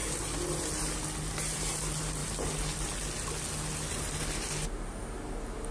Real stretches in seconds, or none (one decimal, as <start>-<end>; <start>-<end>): 0.0-5.7